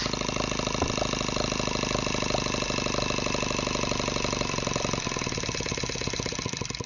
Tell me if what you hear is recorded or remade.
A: recorded